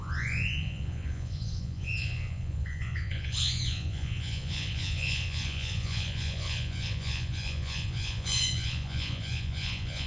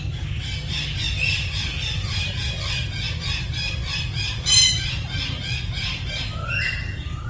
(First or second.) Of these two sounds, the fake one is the first